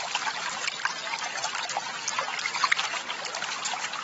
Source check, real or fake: real